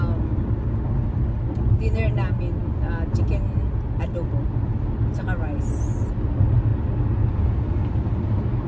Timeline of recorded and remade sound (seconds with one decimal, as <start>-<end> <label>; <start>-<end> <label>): 0.0-8.7 recorded